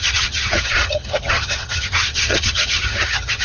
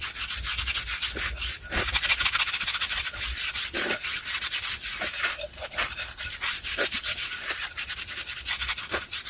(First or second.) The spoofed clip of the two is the first